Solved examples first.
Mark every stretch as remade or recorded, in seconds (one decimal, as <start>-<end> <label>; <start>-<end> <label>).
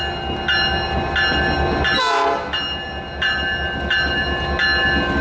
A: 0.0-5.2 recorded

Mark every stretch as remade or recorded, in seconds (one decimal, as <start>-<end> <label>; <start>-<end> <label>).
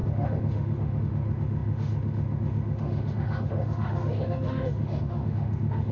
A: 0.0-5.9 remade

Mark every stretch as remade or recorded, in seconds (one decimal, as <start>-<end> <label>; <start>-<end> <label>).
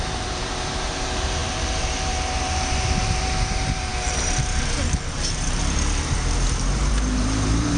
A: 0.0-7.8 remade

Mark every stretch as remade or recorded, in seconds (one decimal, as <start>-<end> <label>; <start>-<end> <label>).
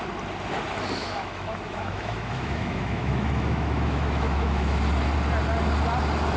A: 0.0-1.0 recorded; 1.0-4.8 remade; 4.8-6.4 recorded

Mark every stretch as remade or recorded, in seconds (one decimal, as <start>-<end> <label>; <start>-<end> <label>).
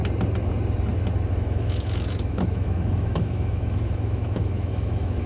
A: 0.0-1.3 recorded; 1.3-5.3 remade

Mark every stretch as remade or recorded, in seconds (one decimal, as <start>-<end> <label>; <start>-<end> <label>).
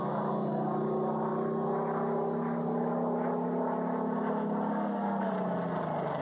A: 0.0-4.7 recorded; 4.7-5.3 remade; 5.3-6.2 recorded